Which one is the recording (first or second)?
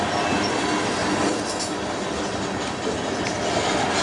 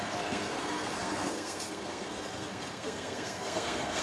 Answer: first